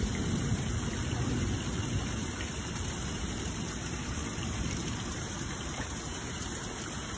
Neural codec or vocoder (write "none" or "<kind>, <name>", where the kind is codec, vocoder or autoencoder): vocoder, BigVGAN v2